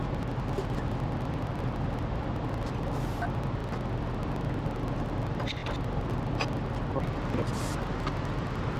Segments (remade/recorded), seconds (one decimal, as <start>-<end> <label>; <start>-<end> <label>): 0.0-8.8 recorded